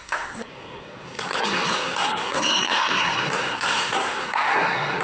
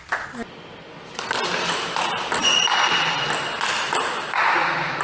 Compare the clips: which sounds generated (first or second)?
first